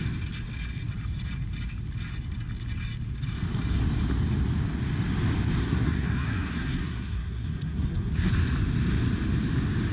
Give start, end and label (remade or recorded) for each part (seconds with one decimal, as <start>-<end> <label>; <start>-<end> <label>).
0.0-5.6 recorded; 5.6-8.3 remade; 8.3-9.9 recorded